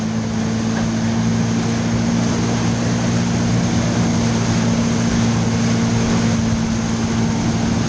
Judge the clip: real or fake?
real